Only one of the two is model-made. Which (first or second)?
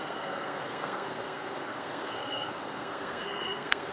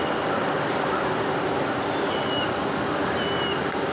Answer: first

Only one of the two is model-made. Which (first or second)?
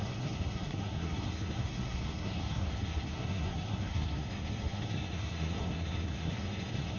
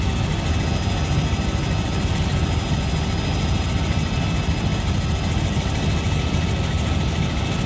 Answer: first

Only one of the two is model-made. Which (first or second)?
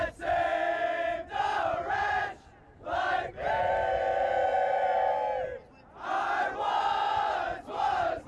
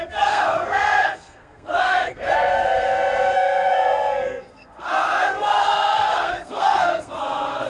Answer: second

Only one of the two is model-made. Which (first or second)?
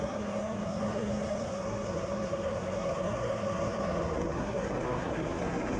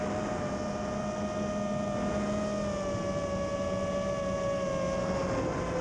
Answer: first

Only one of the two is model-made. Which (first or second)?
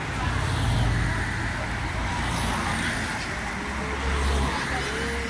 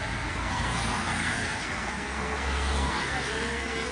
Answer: second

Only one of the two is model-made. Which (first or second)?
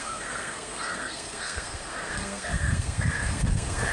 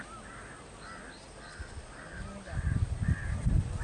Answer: first